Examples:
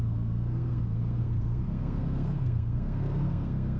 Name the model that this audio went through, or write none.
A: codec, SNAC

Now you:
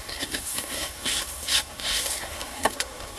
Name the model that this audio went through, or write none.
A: codec, SNAC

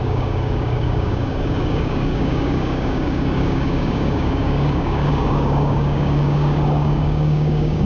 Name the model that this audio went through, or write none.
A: codec, DAC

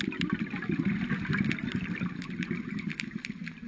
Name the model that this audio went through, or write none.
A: vocoder, BigVGAN v2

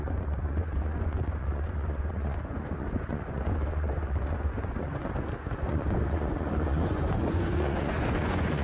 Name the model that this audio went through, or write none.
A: vocoder, Vocos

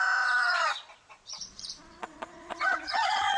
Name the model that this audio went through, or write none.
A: vocoder, Vocos